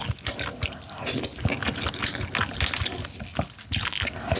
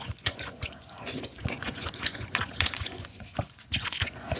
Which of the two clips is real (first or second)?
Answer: first